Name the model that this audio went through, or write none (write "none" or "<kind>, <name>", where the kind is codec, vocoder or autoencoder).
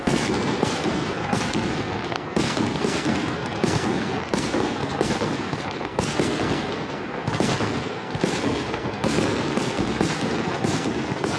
codec, SNAC